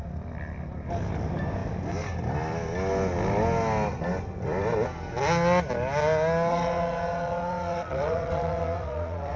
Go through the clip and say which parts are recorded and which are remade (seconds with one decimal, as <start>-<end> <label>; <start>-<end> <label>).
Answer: 0.0-6.5 recorded; 6.5-9.4 remade